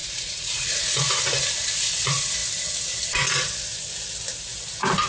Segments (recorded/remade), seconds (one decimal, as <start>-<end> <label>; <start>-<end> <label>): 0.0-1.2 remade; 1.2-5.1 recorded